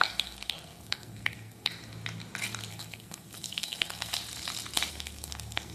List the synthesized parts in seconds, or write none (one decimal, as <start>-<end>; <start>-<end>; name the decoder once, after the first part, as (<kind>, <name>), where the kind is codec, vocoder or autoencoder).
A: 0.0-1.7 (codec, SNAC); 2.7-4.1; 4.9-5.7